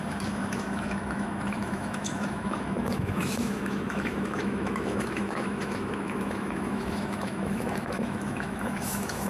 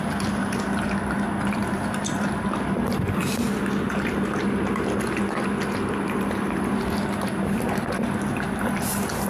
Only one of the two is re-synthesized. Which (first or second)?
first